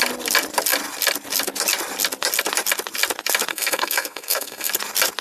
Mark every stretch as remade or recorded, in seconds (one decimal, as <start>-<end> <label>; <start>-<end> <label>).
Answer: 0.0-3.5 recorded; 3.5-4.7 remade; 4.7-5.2 recorded